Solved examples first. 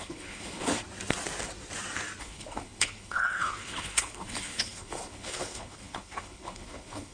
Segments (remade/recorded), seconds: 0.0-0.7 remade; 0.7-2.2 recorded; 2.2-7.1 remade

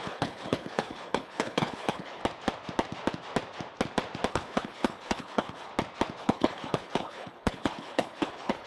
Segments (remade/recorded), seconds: 0.0-2.2 remade; 2.2-4.3 recorded; 4.3-5.7 remade; 5.7-6.2 recorded; 6.2-8.7 remade